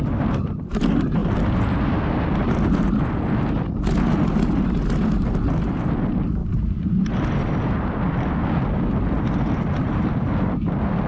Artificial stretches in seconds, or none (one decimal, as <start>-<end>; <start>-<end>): none